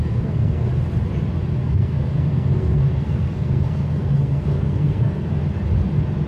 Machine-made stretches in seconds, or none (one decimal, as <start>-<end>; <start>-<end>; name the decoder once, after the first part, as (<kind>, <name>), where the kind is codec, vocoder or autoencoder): 0.0-0.7 (codec, SNAC); 1.6-5.4